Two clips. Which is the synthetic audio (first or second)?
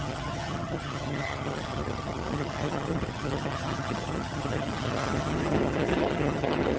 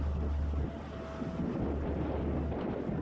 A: first